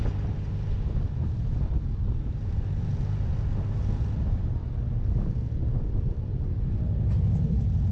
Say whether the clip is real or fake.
real